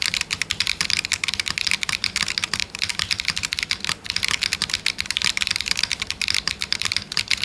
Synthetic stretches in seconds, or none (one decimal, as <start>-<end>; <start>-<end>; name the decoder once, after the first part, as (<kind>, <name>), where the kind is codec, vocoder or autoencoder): none